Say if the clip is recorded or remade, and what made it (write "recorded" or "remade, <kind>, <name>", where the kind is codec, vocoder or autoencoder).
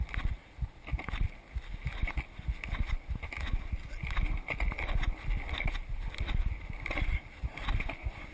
recorded